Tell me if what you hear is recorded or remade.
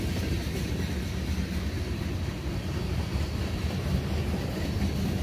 recorded